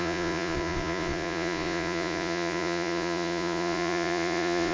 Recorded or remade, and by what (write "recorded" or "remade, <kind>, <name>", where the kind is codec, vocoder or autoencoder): remade, vocoder, Vocos